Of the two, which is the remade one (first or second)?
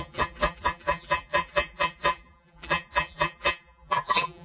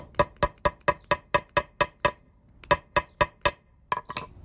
first